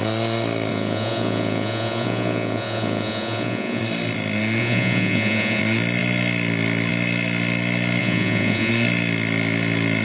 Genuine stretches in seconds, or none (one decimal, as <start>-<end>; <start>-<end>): 0.0-0.7; 3.8-4.6; 5.6-8.0; 8.7-10.0